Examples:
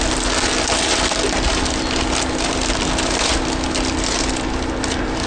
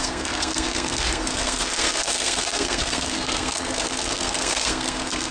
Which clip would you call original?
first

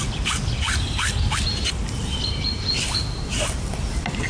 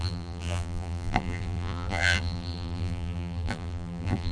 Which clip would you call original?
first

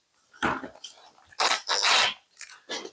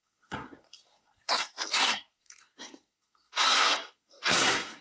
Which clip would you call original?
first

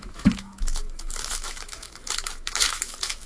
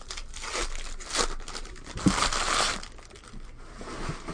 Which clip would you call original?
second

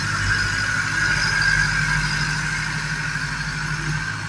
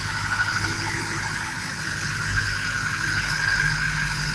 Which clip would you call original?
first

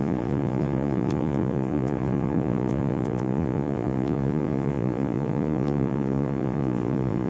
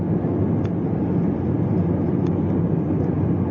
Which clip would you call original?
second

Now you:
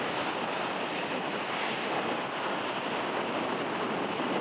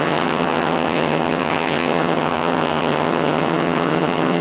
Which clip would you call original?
first